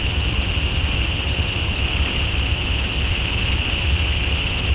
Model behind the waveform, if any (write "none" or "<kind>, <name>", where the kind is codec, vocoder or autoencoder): vocoder, HiFi-GAN